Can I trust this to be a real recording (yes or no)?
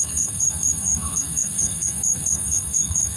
no